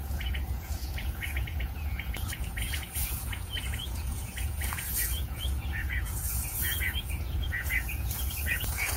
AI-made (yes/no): yes